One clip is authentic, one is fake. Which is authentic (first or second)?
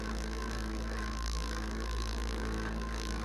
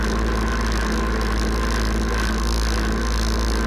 second